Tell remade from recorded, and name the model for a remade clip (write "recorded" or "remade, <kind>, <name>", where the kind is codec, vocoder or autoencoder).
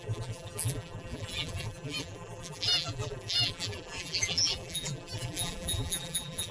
remade, vocoder, BigVGAN v2